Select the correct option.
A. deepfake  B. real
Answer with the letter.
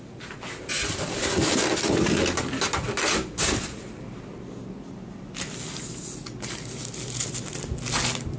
B